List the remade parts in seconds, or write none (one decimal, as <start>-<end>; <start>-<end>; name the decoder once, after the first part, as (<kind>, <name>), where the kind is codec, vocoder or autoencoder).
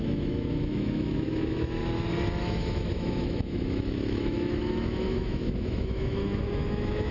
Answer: 0.0-1.8 (autoencoder, DAC-VAE); 2.4-7.1